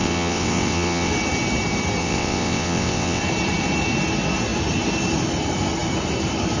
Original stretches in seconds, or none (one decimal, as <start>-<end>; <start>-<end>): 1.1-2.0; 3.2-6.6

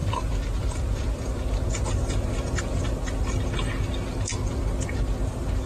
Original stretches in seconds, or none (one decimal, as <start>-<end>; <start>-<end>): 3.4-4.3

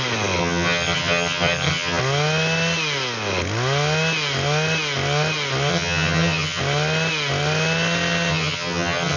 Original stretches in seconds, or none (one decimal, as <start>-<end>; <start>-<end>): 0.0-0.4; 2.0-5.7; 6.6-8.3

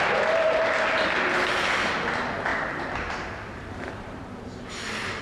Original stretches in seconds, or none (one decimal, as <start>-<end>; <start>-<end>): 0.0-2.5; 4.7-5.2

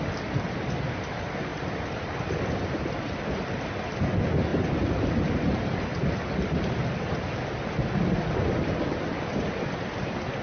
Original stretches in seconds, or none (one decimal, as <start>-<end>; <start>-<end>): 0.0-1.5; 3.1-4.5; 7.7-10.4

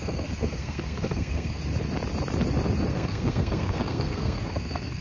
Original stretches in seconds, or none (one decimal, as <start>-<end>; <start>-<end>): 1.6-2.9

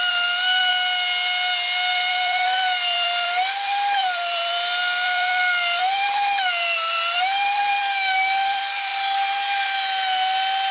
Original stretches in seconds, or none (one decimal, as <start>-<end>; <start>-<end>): 0.7-1.9; 8.9-10.7